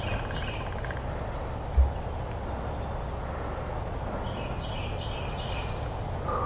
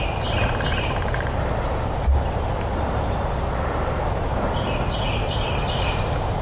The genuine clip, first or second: first